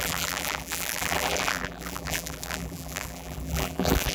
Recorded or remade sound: remade